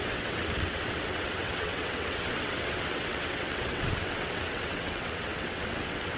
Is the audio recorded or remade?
remade